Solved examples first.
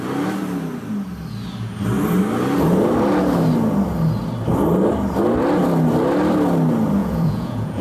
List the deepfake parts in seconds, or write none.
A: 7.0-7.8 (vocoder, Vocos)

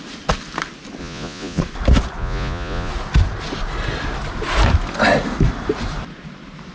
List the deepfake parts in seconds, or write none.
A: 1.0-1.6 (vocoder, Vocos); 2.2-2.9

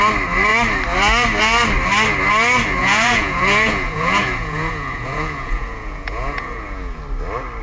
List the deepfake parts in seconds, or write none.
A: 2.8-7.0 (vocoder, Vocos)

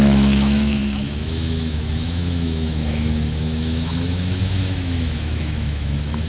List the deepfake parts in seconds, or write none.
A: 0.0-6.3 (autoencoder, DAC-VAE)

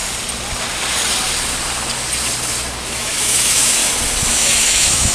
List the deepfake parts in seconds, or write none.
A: 2.9-3.8 (autoencoder, DAC-VAE); 4.3-5.1

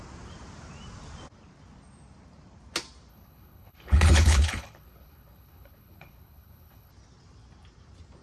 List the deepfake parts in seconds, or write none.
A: 3.1-6.9 (codec, HILCodec)

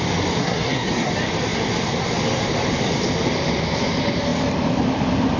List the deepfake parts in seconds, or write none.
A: 0.4-1.1 (codec, SNAC)